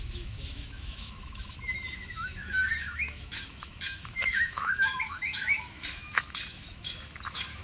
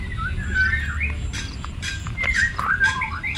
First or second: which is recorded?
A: second